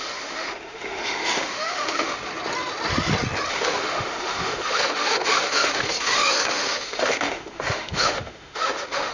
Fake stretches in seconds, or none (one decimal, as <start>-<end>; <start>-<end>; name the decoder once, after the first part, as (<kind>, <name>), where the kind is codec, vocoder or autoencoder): 0.0-2.2 (autoencoder, DAC-VAE); 3.5-9.1